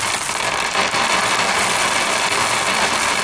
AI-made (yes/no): no